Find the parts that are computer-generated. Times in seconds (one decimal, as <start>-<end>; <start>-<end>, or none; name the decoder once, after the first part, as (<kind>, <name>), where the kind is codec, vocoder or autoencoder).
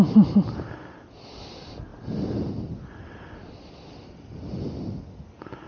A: none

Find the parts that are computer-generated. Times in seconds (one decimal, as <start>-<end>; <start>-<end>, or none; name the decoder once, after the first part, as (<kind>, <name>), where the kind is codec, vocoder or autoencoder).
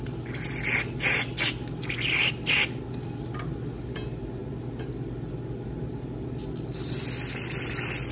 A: none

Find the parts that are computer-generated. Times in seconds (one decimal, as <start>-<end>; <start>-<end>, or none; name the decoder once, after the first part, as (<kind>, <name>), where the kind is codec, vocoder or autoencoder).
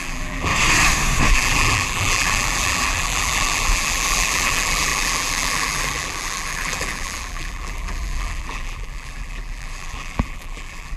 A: 0.0-0.5 (vocoder, BigVGAN v2); 1.3-11.0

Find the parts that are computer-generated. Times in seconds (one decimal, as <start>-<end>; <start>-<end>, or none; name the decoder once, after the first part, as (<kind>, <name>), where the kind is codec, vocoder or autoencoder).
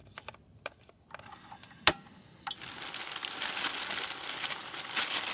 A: 0.0-5.3 (vocoder, BigVGAN v2)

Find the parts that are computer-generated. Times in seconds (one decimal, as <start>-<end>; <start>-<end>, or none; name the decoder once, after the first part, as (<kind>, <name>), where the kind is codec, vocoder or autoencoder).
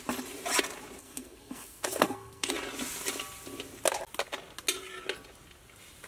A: 1.0-2.5 (codec, SNAC)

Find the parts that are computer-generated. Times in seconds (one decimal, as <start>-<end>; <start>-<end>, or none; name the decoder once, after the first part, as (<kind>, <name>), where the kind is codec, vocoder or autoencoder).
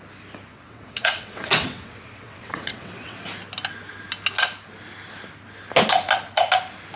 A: 0.5-3.2 (vocoder, WaveNeXt)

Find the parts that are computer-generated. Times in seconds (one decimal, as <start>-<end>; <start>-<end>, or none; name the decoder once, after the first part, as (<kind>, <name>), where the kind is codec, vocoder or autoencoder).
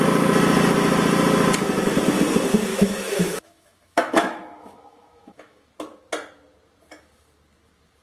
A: 2.7-5.7 (autoencoder, DAC-VAE)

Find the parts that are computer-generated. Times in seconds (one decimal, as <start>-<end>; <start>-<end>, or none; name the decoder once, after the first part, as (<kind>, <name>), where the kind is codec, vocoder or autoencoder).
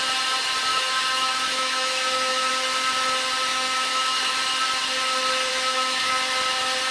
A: 0.7-2.5 (autoencoder, DAC-VAE); 3.5-4.3; 5.5-6.1